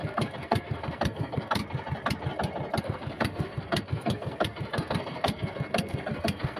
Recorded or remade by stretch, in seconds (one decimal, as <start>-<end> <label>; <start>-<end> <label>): 0.0-1.6 remade; 1.6-2.8 recorded; 2.8-6.6 remade